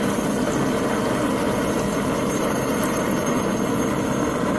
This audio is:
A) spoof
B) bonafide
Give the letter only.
B